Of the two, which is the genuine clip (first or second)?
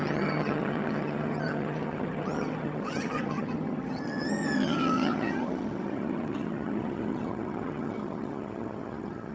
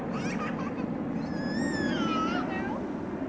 second